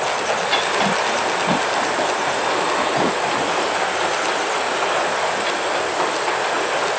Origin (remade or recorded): recorded